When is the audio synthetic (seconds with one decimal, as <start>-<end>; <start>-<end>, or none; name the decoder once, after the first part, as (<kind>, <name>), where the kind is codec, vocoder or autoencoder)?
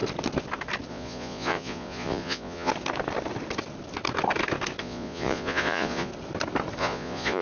0.9-2.7 (vocoder, Vocos); 4.8-6.1; 6.8-7.4